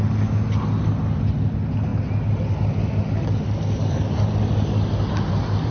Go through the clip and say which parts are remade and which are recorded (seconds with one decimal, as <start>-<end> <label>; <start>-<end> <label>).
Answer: 0.0-5.7 recorded